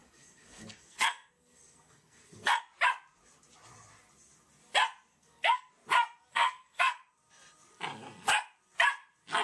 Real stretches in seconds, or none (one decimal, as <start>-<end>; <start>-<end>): 2.6-5.1; 5.7-6.3; 7.0-9.4